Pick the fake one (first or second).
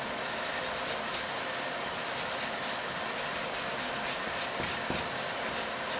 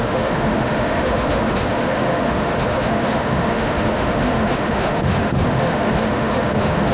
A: second